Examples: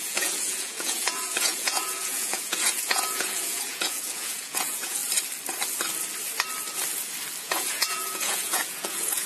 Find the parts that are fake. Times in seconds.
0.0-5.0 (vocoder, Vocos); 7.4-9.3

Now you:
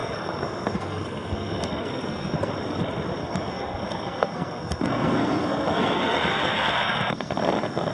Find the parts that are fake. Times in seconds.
0.0-2.5 (codec, SNAC); 3.2-7.9

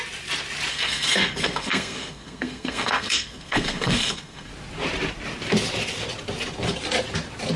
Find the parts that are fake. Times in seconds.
0.7-4.5 (codec, SNAC)

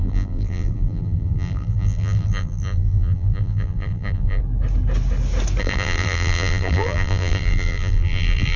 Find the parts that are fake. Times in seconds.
0.0-4.4 (vocoder, BigVGAN v2); 5.6-8.6

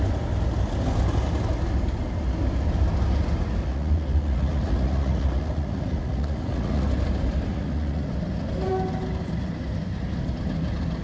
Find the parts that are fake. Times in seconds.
3.6-6.9 (vocoder, Vocos); 7.5-8.1

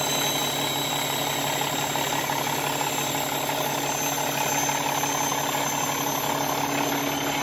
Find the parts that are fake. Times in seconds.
none

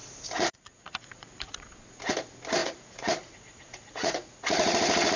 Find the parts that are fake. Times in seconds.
0.0-2.1 (vocoder, Vocos); 2.6-5.2

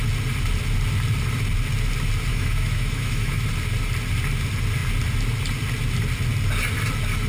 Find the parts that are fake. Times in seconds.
2.3-3.5 (autoencoder, DAC-VAE)